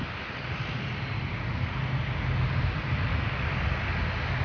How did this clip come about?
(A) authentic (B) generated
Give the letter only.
A